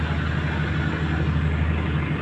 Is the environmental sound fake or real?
real